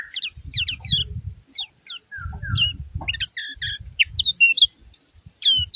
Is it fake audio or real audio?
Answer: real